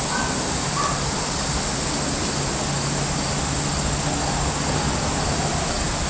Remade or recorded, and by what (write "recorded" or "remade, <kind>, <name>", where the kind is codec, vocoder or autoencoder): recorded